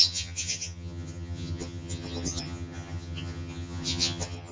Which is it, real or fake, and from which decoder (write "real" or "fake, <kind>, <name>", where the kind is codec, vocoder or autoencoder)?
fake, vocoder, HiFi-GAN